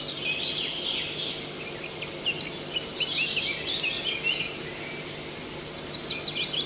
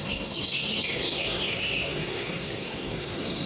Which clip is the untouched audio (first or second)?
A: first